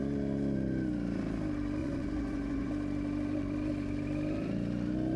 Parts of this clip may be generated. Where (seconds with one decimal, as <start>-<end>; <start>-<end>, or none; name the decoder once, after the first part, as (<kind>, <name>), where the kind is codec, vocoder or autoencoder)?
1.8-2.7 (vocoder, Vocos)